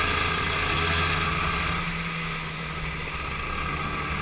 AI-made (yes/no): no